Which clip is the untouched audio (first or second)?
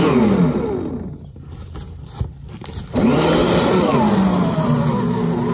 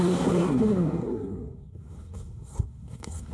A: first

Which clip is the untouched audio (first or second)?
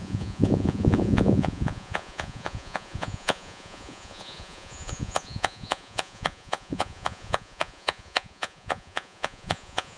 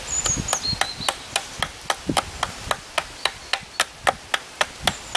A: second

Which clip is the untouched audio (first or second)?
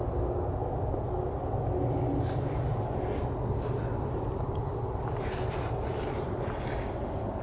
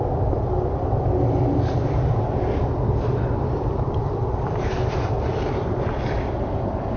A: first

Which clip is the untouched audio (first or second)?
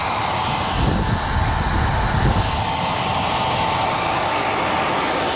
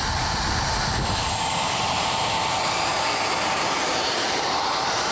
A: first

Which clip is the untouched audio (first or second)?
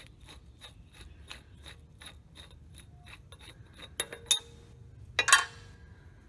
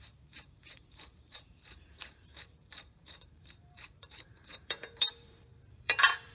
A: first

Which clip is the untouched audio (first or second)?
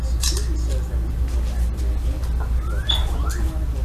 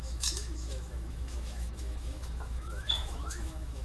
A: first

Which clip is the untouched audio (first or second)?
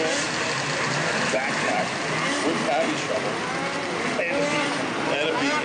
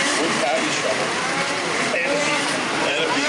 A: first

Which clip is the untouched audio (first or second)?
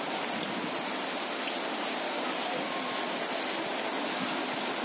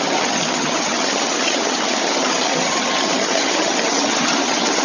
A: first